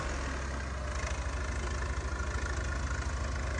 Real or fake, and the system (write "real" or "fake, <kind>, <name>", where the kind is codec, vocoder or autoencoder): real